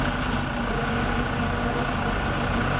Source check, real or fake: real